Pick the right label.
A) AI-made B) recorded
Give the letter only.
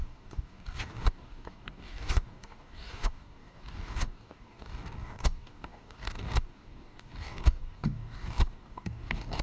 A